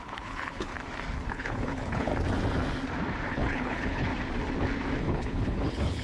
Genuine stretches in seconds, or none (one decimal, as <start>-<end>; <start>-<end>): 0.7-1.3; 2.1-3.3; 4.1-5.0